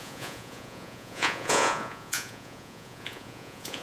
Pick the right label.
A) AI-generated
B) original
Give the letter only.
A